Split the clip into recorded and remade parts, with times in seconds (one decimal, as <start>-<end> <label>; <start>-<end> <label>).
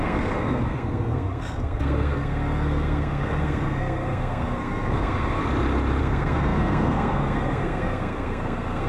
0.0-5.4 remade; 5.4-6.0 recorded; 6.0-8.9 remade